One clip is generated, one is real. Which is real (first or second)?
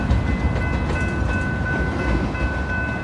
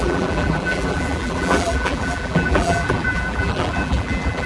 first